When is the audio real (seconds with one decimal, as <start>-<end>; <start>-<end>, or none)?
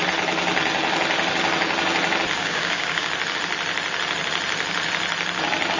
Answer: 0.0-2.4; 3.1-5.8